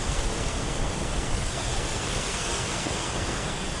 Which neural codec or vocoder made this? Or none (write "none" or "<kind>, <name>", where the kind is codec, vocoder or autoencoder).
codec, SNAC